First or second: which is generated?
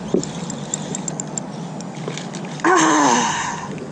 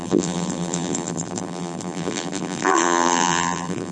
second